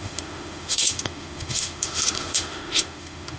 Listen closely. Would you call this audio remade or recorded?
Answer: remade